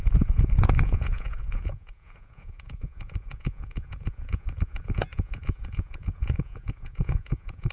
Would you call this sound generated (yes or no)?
yes